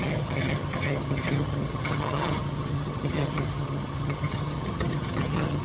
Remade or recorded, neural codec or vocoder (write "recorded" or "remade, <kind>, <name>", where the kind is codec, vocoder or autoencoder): remade, vocoder, HiFi-GAN